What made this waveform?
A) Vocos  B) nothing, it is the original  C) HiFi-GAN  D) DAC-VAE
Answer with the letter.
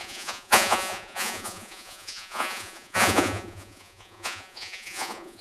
A